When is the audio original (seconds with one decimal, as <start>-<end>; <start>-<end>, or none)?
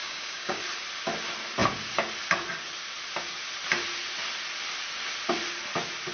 0.6-6.1